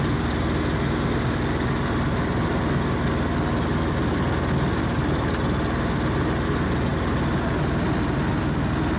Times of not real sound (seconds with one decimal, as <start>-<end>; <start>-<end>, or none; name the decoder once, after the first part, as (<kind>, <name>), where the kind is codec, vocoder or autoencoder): none